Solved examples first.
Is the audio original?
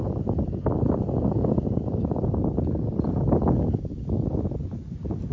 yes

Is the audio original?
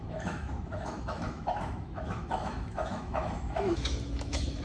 no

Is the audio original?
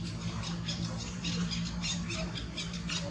yes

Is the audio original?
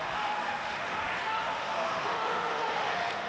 no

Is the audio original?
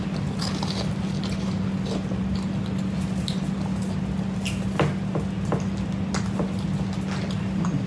yes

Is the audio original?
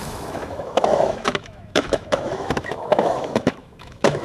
no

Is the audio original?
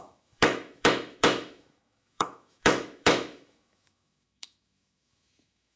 no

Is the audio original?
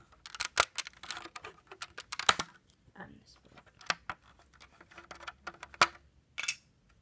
yes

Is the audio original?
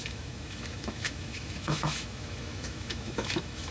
no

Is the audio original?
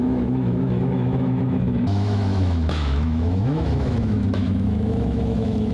no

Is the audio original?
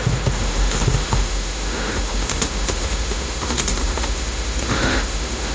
no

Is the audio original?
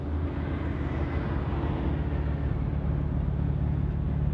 yes